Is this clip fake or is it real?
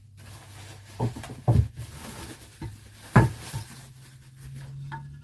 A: real